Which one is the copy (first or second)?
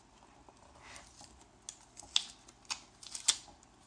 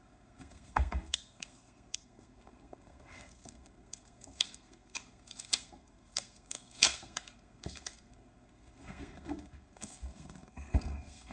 second